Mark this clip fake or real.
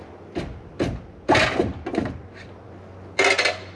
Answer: real